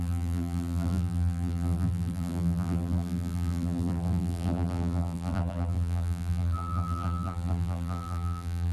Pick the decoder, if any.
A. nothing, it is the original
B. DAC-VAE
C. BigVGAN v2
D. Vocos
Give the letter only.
C